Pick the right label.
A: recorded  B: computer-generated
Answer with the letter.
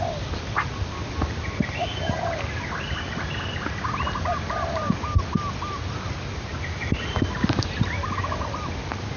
A